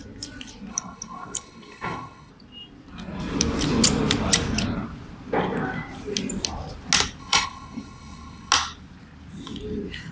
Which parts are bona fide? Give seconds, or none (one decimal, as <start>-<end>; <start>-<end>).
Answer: 0.0-0.7; 2.3-7.2; 8.5-10.1